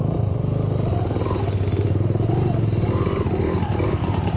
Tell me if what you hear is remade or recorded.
recorded